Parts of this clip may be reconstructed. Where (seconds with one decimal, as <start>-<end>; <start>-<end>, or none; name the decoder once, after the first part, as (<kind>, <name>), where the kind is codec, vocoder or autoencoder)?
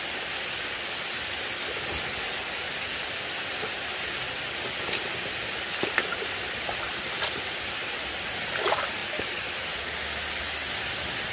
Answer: none